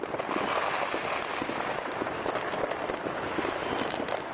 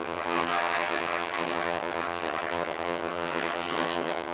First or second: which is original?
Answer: first